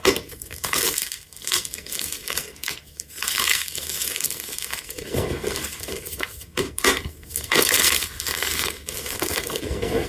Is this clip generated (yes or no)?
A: yes